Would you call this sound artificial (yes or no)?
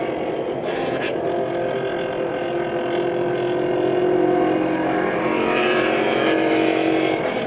no